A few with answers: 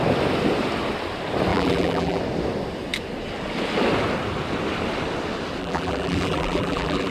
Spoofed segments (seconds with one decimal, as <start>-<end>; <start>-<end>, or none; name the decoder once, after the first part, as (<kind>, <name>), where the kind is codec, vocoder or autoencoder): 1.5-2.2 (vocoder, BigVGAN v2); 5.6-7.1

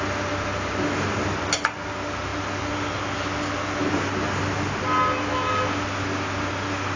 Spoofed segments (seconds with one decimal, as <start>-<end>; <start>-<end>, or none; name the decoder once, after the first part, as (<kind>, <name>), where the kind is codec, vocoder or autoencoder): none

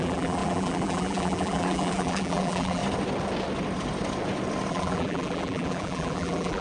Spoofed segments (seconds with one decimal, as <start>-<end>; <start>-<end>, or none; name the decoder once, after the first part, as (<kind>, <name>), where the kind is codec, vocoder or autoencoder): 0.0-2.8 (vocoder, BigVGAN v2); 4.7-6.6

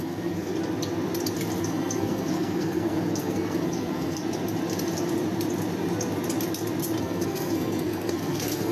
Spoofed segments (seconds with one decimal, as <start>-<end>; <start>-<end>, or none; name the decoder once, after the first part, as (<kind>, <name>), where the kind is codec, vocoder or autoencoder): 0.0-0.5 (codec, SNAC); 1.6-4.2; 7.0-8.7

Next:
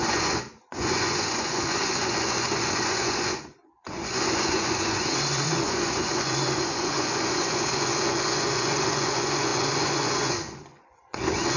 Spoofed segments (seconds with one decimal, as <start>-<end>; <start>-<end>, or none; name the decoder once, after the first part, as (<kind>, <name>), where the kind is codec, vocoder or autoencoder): 0.0-11.6 (vocoder, Vocos)